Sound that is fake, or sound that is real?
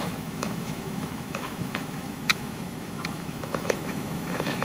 fake